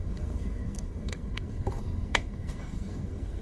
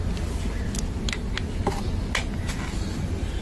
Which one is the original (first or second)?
second